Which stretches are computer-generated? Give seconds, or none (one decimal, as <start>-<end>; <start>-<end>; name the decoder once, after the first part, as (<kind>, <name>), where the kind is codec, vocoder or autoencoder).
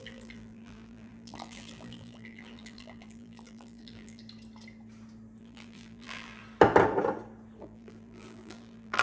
0.0-4.2 (vocoder, BigVGAN v2); 5.4-6.4; 7.6-9.0